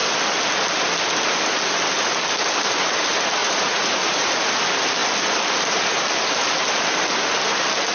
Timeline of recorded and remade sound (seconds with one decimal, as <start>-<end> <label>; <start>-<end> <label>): 0.0-3.4 recorded; 3.4-4.3 remade; 4.3-7.9 recorded